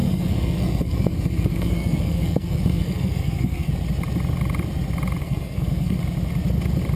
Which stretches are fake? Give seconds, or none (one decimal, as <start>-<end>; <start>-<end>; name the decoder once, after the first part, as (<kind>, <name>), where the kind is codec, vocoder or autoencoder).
0.0-3.7 (codec, SNAC); 5.2-6.0